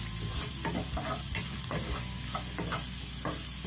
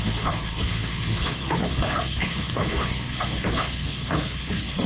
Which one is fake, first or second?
second